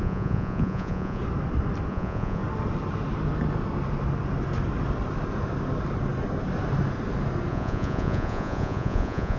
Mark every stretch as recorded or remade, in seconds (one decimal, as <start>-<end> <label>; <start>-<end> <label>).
0.0-1.2 remade; 1.2-1.9 recorded; 1.9-2.4 remade; 2.4-7.5 recorded; 7.5-9.4 remade